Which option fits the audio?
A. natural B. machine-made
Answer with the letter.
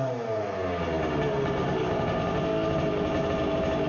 A